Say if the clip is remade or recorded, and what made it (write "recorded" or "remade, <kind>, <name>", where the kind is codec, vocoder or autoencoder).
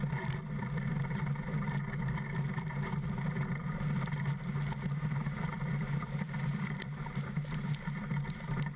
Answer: recorded